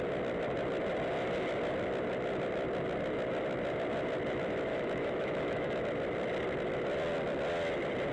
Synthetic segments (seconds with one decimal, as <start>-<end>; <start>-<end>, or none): 4.7-5.8